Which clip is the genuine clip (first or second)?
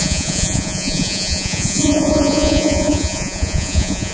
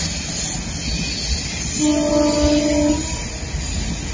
second